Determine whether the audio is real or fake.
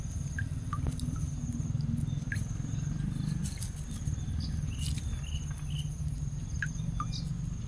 real